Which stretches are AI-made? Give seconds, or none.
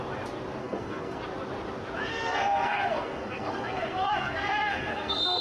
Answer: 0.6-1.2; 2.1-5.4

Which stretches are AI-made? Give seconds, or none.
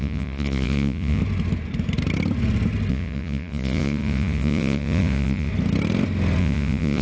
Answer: 0.0-1.2; 2.9-5.5; 6.4-7.0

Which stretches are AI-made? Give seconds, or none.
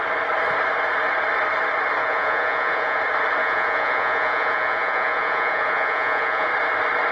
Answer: 2.0-3.0; 3.4-6.5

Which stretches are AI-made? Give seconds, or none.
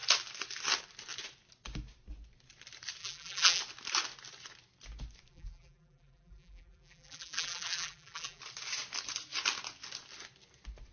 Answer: 3.0-3.6; 5.3-8.4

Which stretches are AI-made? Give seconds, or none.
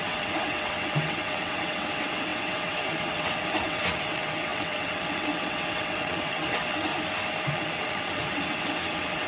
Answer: 0.0-6.9; 7.5-9.3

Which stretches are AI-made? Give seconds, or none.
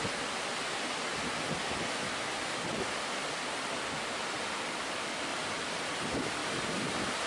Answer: 0.0-1.1; 4.6-6.4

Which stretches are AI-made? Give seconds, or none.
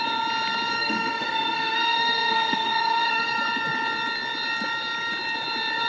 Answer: 0.7-3.2